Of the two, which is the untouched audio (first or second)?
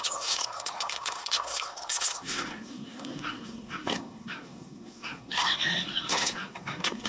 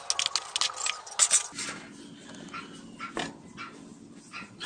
second